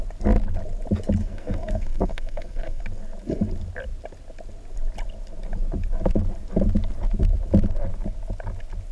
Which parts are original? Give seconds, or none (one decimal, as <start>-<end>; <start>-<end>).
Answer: 0.0-1.2; 2.8-8.9